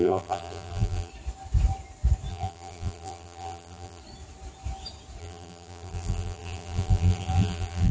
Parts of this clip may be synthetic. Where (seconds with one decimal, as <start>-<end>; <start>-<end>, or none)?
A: 0.0-1.1; 2.3-4.0; 5.2-7.9